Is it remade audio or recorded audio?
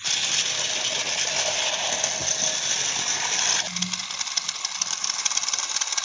recorded